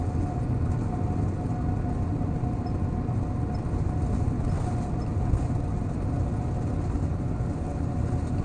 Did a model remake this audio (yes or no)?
no